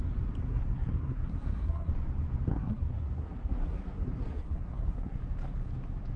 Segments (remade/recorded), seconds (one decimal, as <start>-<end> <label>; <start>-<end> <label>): 0.0-0.5 recorded; 0.5-1.9 remade; 1.9-2.5 recorded; 2.5-5.2 remade; 5.2-6.2 recorded

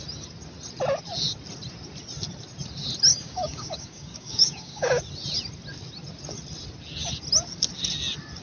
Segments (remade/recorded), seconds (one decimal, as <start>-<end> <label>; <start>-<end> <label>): 0.0-3.1 recorded; 3.1-5.0 remade; 5.0-8.4 recorded

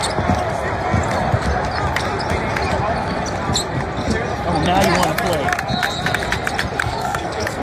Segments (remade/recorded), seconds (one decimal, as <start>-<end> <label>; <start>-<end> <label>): 0.0-6.8 recorded; 6.8-7.6 remade

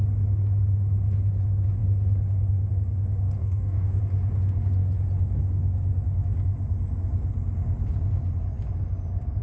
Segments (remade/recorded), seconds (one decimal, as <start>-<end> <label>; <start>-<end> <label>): 0.0-3.4 recorded; 3.4-4.0 remade; 4.0-9.4 recorded

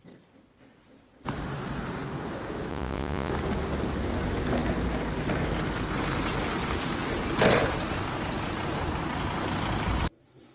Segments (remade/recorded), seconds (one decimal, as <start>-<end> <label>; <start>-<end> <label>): 0.0-2.7 recorded; 2.7-3.3 remade; 3.3-10.5 recorded

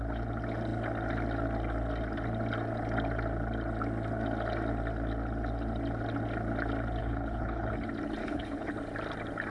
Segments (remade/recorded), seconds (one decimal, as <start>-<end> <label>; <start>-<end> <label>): 0.0-7.0 recorded; 7.0-7.7 remade; 7.7-8.2 recorded; 8.2-8.7 remade; 8.7-9.5 recorded

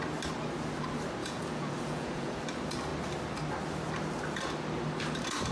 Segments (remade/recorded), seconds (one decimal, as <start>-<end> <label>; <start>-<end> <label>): 0.0-1.2 recorded; 1.2-2.4 remade; 2.4-5.5 recorded

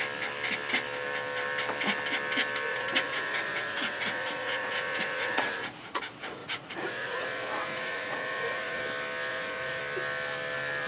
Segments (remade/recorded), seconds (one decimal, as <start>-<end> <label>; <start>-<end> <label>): 0.0-2.7 recorded; 2.7-6.0 remade; 6.0-6.4 recorded; 6.4-8.8 remade; 8.8-9.3 recorded; 9.3-9.8 remade; 9.8-10.9 recorded